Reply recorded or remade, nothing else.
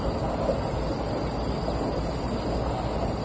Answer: recorded